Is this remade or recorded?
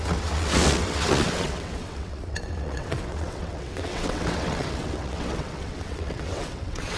remade